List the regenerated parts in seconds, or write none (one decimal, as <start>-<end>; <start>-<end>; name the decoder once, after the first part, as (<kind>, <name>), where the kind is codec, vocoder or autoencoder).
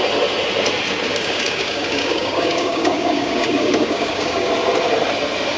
1.1-4.5 (codec, DAC)